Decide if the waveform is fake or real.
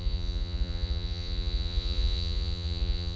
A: fake